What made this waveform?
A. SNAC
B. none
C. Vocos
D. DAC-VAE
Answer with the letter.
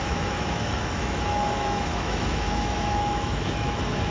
D